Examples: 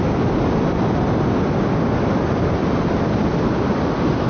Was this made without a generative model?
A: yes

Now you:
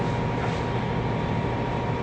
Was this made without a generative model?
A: yes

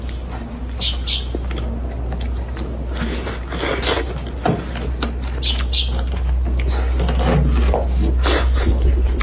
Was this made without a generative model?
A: yes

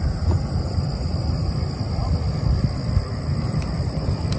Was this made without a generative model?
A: yes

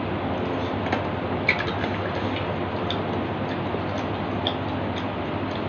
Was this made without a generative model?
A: yes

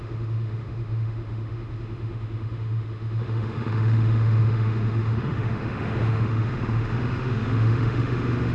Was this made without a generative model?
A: no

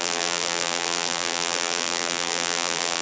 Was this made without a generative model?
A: no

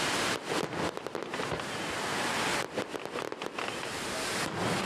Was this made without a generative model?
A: yes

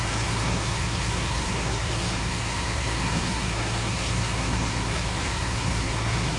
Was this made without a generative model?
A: no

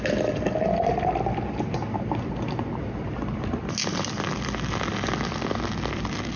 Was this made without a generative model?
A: yes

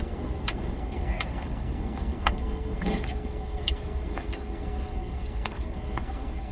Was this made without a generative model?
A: no